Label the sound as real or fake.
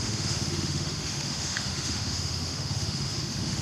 fake